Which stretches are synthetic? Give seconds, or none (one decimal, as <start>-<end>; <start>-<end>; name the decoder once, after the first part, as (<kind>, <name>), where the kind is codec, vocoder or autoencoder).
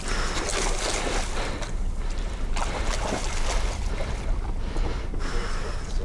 none